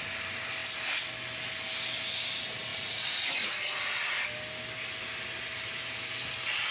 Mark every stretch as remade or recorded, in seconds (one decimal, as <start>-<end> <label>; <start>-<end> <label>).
0.0-2.7 recorded; 2.7-3.5 remade; 3.5-6.7 recorded